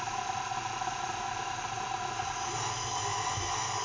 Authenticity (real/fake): real